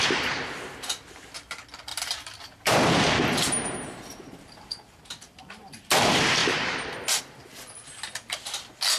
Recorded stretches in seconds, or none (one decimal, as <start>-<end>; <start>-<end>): 0.0-1.9; 5.4-9.0